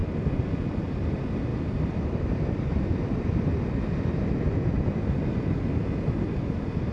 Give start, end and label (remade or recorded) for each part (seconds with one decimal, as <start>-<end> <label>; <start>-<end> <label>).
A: 0.0-1.5 recorded; 1.5-3.2 remade; 3.2-6.9 recorded